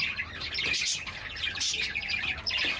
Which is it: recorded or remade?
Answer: recorded